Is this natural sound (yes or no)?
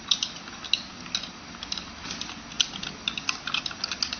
yes